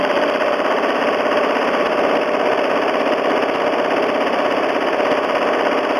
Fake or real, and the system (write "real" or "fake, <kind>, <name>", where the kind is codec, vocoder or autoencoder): real